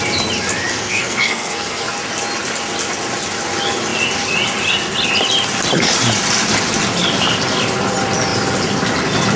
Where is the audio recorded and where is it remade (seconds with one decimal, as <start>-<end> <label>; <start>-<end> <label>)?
0.0-0.7 recorded; 0.7-1.9 remade; 1.9-9.4 recorded